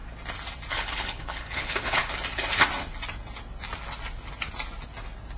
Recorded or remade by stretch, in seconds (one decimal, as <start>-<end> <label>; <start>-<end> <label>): 0.0-0.7 recorded; 0.7-2.0 remade; 2.0-5.4 recorded